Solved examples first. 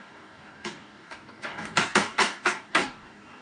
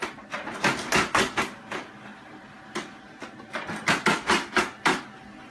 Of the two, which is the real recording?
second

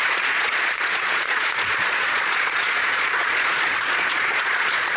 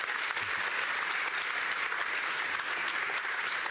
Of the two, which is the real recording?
second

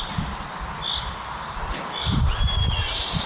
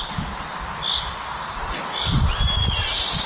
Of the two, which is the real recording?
second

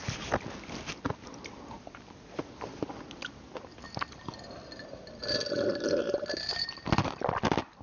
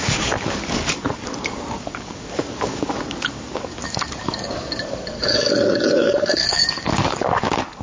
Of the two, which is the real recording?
first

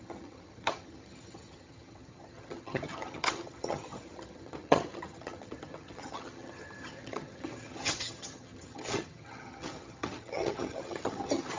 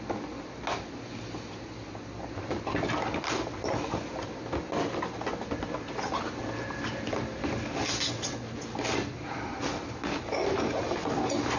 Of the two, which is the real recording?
second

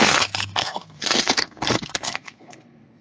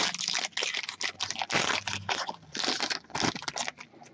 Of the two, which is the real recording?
second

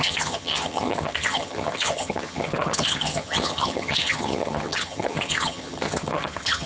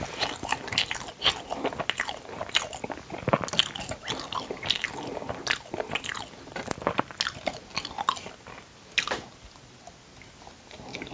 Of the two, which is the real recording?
second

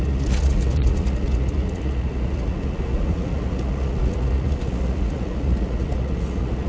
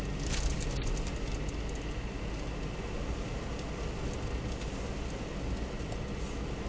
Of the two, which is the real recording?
second